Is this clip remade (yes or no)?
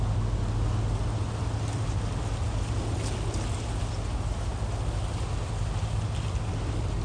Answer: no